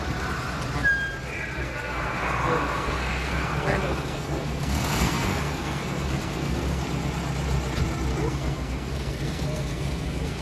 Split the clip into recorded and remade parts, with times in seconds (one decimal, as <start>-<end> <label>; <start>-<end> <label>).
0.0-1.6 recorded; 1.6-6.8 remade; 6.8-8.1 recorded; 8.1-10.4 remade